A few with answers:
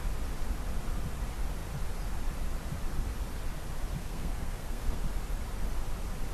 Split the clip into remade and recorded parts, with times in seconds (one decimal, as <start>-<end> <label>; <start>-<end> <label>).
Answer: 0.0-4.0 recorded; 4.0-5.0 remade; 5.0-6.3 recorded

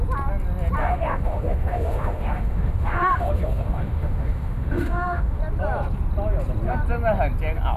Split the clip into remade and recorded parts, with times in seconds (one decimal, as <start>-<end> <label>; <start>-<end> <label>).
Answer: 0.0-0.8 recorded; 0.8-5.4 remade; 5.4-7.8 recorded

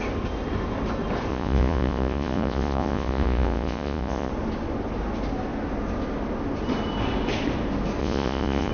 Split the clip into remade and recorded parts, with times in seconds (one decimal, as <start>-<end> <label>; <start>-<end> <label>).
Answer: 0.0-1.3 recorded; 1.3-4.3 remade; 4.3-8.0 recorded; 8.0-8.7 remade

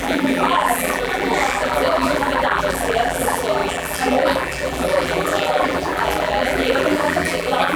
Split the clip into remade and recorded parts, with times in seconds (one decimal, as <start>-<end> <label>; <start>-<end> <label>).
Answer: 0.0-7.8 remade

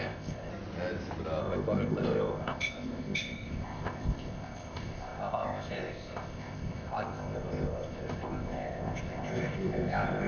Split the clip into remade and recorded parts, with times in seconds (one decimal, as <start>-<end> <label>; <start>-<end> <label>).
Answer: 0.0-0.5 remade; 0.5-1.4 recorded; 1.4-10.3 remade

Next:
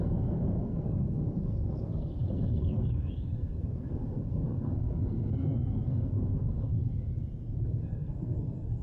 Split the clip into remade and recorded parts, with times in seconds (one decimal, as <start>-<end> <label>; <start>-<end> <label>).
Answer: 0.0-7.1 remade; 7.1-7.6 recorded; 7.6-8.8 remade

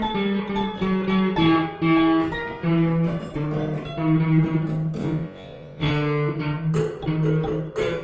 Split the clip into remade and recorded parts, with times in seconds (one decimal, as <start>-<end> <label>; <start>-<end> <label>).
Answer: 0.0-5.0 recorded; 5.0-5.9 remade; 5.9-8.0 recorded